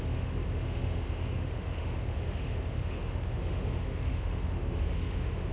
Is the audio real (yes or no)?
no